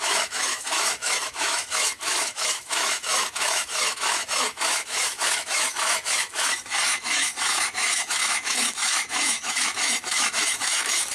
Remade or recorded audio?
remade